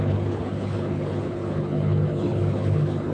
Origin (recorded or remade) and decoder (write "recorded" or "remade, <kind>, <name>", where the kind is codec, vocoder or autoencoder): remade, codec, HILCodec